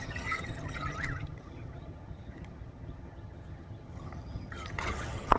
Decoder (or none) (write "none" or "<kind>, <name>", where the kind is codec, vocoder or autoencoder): vocoder, HiFi-GAN